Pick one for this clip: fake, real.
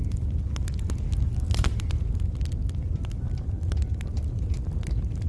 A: real